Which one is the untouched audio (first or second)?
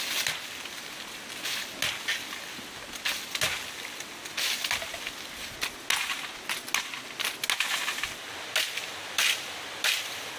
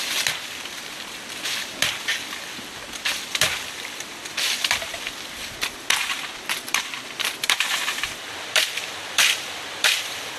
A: first